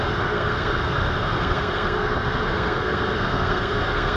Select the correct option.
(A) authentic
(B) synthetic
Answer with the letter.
B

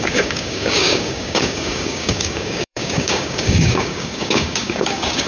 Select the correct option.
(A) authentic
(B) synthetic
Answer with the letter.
B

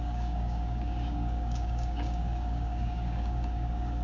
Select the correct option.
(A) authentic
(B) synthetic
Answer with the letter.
B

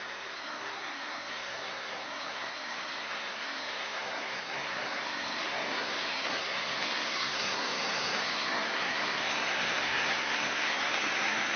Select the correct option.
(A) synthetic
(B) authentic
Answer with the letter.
A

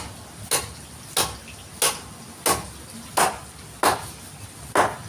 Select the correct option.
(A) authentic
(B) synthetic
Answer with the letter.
A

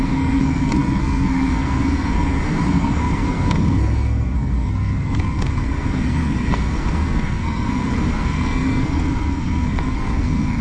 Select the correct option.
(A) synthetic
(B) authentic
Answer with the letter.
A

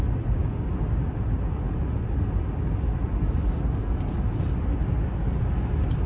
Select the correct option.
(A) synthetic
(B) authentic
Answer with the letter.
B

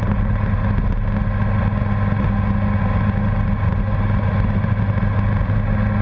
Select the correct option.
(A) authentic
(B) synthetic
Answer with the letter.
A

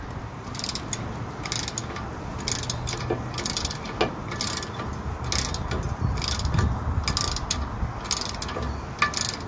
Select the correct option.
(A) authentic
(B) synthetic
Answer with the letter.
A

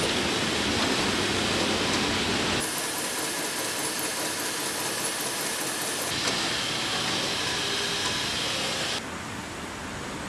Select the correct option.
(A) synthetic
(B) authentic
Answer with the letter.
B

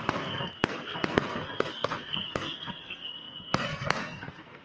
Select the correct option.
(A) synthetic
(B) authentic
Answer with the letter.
A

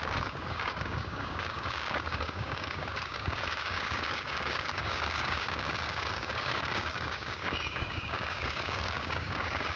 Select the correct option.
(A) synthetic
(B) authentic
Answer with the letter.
A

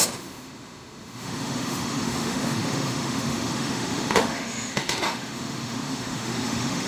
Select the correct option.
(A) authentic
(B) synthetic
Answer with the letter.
B